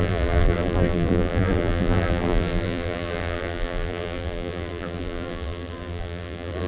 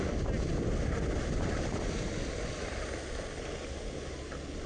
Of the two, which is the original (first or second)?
second